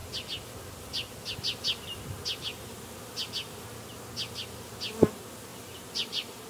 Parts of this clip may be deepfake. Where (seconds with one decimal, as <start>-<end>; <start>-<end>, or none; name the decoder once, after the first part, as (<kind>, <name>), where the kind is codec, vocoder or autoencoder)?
3.9-4.8 (vocoder, BigVGAN v2); 5.5-6.5